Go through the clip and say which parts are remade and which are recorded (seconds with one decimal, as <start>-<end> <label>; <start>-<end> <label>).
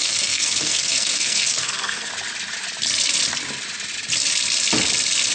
0.0-2.1 remade; 2.1-5.3 recorded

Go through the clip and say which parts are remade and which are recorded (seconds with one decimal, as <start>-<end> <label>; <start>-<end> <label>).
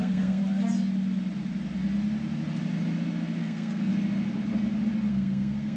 0.0-0.4 remade; 0.4-3.4 recorded; 3.4-3.9 remade; 3.9-5.1 recorded; 5.1-5.8 remade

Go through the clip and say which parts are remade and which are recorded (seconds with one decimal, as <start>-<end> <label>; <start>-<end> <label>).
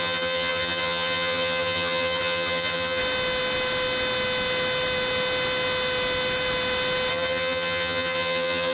0.0-3.0 remade; 3.0-7.1 recorded; 7.1-8.7 remade